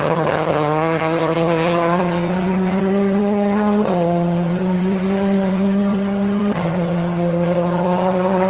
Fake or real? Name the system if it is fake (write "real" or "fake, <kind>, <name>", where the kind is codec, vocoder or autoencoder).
fake, vocoder, HiFi-GAN